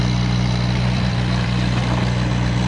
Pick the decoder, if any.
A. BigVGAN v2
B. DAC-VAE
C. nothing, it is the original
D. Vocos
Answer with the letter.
A